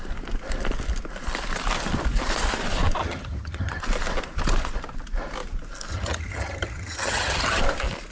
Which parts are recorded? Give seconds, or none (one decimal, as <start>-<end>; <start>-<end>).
0.0-3.0; 3.8-5.9; 7.6-8.1